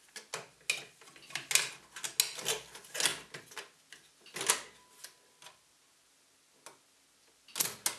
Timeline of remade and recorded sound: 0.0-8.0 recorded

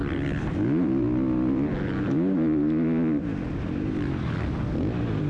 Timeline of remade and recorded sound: 0.0-5.3 recorded

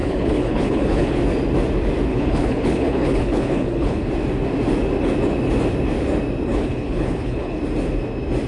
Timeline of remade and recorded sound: 0.0-1.2 remade; 1.2-2.1 recorded; 2.1-4.1 remade; 4.1-6.5 recorded; 6.5-7.6 remade; 7.6-8.5 recorded